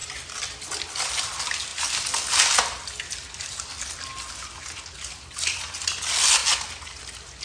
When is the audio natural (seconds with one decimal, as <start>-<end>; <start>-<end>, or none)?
0.0-7.4